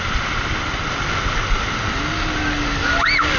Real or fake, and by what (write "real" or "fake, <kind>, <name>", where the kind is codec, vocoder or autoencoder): real